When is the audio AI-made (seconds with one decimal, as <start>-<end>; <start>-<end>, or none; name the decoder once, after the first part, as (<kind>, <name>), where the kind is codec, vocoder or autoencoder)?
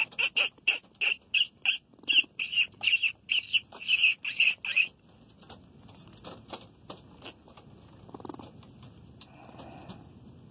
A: none